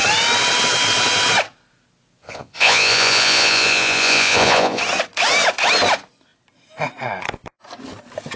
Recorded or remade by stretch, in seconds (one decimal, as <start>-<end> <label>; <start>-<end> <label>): 0.0-2.2 recorded; 2.2-4.8 remade; 4.8-8.4 recorded